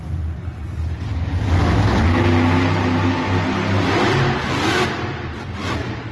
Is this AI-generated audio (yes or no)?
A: no